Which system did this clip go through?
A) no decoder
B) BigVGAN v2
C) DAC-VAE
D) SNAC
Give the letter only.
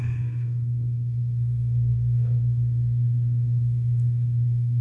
D